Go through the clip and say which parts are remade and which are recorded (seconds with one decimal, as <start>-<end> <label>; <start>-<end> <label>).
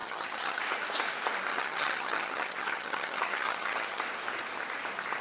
0.0-0.6 remade; 0.6-1.5 recorded; 1.5-4.0 remade; 4.0-5.2 recorded